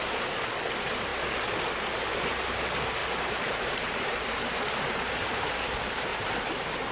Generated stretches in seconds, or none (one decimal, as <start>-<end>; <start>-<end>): 3.0-4.6; 6.1-6.9

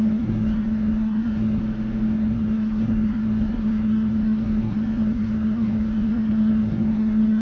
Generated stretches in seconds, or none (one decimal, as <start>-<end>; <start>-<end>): 0.0-1.6; 2.1-7.4